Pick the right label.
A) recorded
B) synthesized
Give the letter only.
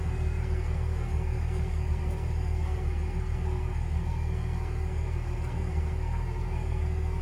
B